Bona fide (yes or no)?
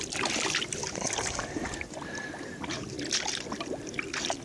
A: yes